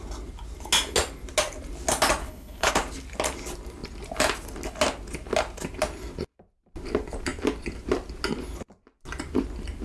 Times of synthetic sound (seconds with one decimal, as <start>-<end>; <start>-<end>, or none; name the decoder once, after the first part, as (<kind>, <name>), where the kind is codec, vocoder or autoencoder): 2.2-2.7 (codec, HILCodec)